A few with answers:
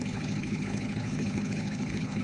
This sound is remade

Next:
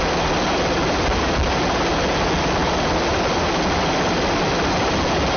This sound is recorded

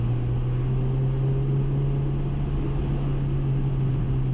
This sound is recorded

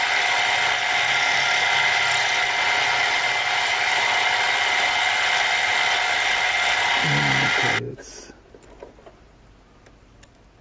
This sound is recorded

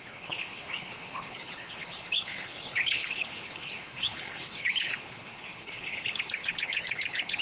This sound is remade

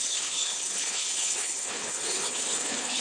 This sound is remade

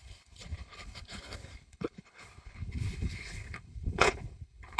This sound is remade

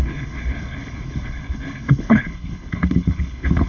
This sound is remade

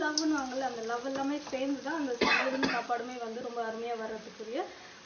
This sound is recorded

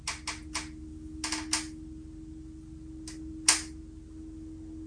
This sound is recorded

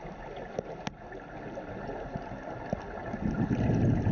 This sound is recorded